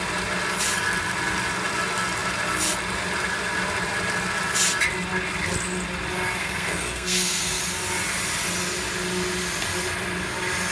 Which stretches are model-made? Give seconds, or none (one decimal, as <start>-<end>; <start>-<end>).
6.4-7.6